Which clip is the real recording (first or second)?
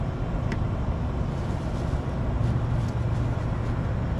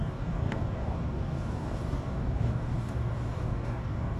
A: first